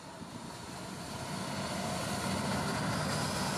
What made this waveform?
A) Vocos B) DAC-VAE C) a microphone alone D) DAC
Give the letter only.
C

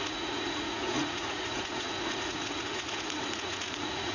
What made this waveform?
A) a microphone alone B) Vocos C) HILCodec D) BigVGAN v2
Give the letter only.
B